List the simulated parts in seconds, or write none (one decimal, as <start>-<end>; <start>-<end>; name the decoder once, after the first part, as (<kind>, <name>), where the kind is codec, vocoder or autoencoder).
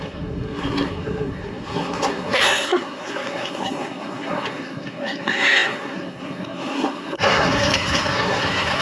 0.0-8.8 (codec, SNAC)